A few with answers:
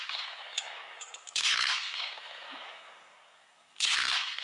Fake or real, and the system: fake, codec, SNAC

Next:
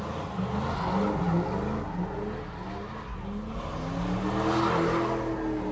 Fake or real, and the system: real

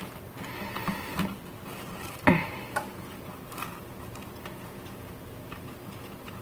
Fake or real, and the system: real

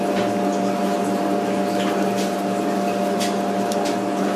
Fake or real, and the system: real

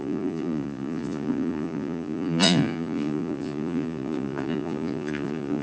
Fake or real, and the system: fake, vocoder, Vocos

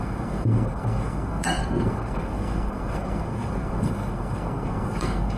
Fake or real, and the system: fake, codec, SNAC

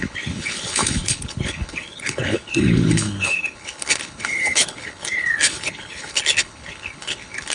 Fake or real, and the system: fake, codec, HILCodec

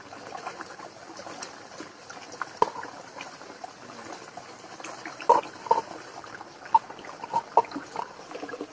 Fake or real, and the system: real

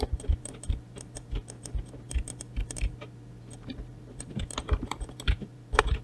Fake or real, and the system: fake, vocoder, BigVGAN v2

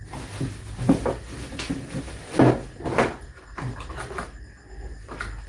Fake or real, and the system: real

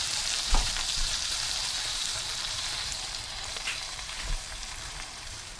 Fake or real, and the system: fake, vocoder, BigVGAN v2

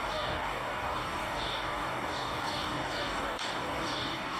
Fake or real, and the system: fake, codec, DAC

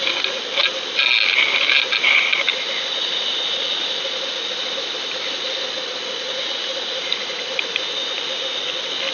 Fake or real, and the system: real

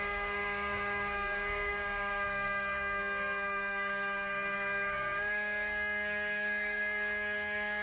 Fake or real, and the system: fake, codec, SNAC